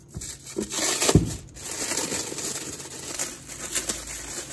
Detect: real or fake real